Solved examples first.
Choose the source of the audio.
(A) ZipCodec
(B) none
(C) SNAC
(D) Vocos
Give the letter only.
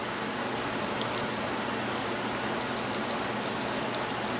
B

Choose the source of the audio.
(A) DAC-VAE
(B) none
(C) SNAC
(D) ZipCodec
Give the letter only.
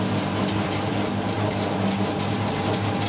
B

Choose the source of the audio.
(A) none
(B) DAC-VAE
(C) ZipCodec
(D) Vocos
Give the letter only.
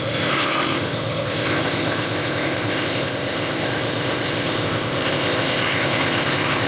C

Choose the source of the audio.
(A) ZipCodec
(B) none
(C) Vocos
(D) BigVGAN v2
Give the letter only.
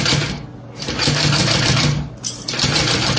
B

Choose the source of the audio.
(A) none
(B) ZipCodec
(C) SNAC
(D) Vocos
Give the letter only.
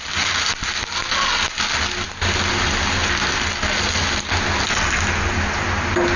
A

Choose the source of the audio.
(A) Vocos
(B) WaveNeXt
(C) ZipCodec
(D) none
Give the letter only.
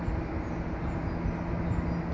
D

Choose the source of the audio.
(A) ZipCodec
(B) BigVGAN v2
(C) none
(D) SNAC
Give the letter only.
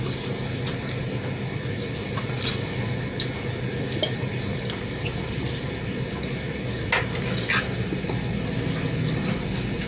C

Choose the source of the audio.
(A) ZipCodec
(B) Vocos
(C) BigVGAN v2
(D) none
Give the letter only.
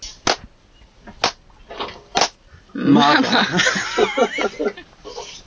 D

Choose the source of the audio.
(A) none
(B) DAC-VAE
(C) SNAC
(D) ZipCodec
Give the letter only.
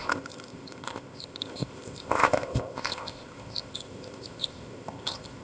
D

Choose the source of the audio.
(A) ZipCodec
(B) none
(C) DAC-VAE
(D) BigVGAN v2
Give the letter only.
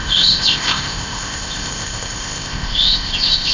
A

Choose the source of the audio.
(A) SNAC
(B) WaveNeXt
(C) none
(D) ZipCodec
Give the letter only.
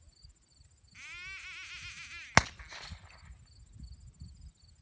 C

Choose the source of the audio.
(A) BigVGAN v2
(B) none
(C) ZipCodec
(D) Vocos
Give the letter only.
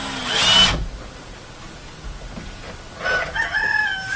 B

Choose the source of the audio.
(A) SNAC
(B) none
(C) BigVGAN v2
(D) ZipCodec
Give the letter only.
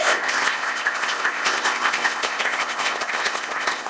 D